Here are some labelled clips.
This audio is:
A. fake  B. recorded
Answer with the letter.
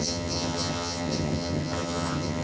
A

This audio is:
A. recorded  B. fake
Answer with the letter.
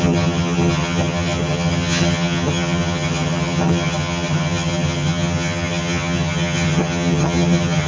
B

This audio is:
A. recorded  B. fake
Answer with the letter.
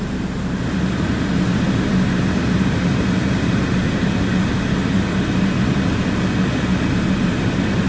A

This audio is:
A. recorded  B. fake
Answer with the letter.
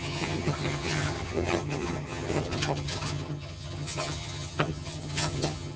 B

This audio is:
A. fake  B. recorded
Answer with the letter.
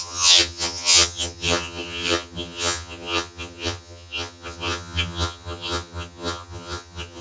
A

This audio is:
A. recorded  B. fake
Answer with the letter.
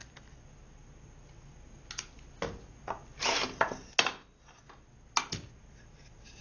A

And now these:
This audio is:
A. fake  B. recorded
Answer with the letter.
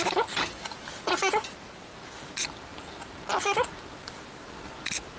B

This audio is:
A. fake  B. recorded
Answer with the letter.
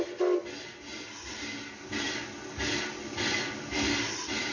B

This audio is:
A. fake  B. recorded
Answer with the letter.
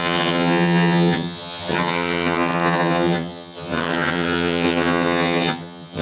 A